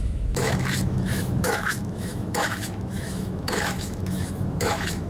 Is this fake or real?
fake